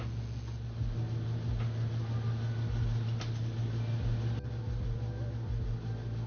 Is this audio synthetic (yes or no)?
no